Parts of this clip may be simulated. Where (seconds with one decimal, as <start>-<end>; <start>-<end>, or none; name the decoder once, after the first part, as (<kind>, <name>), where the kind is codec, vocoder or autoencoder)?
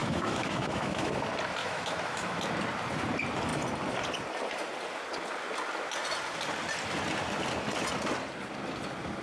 0.0-1.1 (autoencoder, DAC-VAE); 1.6-2.4